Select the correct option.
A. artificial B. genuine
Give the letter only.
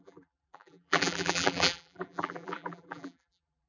A